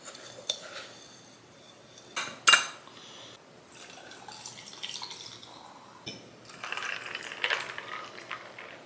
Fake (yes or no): no